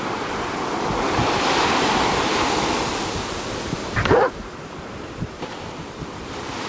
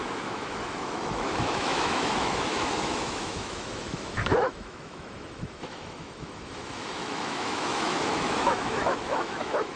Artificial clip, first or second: second